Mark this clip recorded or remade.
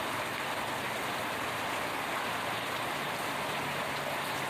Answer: recorded